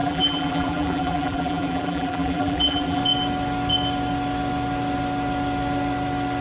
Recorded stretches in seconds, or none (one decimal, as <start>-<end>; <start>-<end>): 3.0-6.4